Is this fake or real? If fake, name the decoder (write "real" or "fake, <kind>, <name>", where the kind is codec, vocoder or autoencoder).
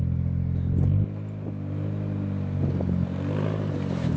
real